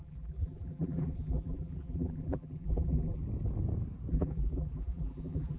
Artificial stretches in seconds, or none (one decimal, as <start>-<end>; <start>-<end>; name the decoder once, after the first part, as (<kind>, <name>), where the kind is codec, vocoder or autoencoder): 0.0-3.2 (vocoder, BigVGAN v2); 4.1-5.6